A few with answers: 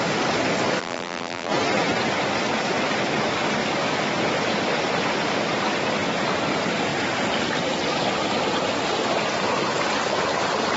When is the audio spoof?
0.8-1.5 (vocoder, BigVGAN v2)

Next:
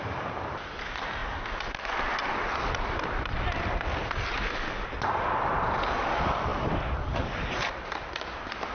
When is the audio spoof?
0.0-1.2 (vocoder, BigVGAN v2); 4.2-6.5; 7.2-8.7

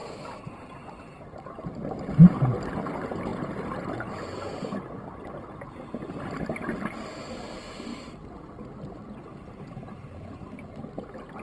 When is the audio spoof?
0.0-1.0 (vocoder, BigVGAN v2); 7.9-10.8

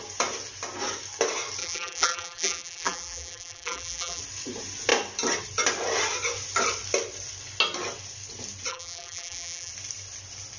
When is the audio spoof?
1.6-4.2 (vocoder, BigVGAN v2); 8.7-9.7

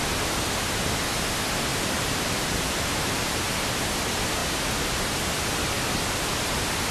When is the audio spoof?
1.7-3.4 (vocoder, BigVGAN v2)

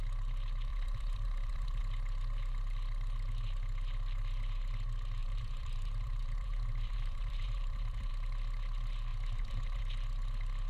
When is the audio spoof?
0.7-1.8 (vocoder, BigVGAN v2); 5.2-8.1; 9.1-9.8

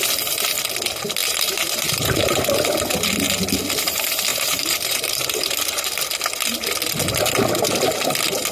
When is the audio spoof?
1.2-2.4 (vocoder, BigVGAN v2); 4.3-6.0

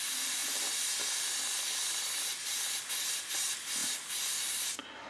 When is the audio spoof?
none